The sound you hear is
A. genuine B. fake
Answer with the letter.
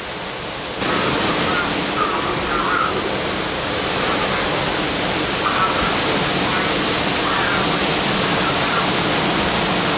A